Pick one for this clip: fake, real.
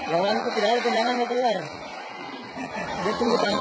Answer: fake